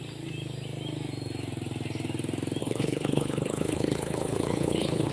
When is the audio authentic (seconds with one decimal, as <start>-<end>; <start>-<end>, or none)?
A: 0.0-2.6